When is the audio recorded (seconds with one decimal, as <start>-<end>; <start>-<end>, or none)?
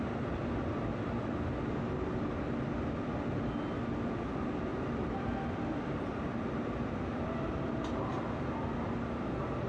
0.0-4.7; 7.9-9.7